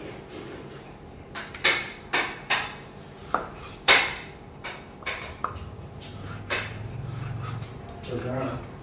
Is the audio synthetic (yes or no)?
yes